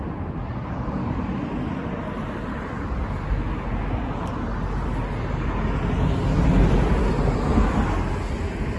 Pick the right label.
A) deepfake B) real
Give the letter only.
B